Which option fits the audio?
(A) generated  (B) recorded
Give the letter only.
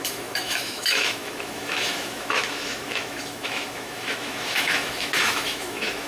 A